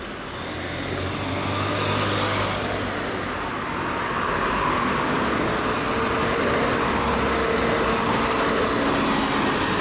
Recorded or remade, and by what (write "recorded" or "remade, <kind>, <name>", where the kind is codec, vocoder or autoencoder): recorded